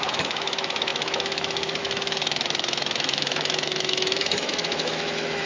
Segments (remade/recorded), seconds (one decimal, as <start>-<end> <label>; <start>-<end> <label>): 0.0-5.5 remade